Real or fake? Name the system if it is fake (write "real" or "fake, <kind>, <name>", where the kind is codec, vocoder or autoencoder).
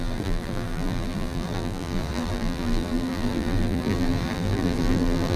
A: fake, vocoder, BigVGAN v2